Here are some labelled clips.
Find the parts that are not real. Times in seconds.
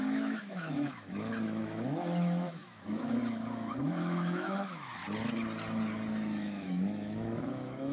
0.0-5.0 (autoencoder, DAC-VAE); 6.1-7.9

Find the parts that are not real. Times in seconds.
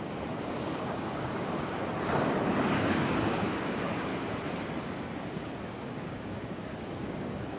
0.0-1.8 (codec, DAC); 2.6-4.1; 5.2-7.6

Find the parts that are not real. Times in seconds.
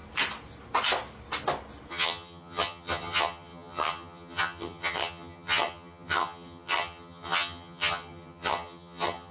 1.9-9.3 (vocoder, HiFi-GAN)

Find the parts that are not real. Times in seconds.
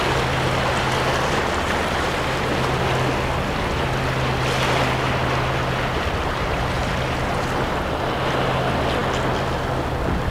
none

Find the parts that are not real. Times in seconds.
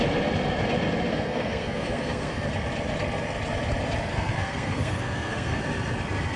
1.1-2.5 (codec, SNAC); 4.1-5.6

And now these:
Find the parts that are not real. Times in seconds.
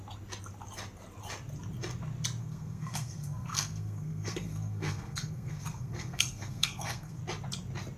2.4-7.2 (codec, SNAC)